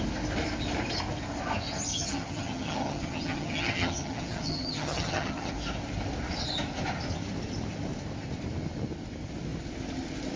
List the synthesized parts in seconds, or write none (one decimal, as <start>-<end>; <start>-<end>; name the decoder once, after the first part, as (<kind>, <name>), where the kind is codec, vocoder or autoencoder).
1.9-5.5 (vocoder, HiFi-GAN)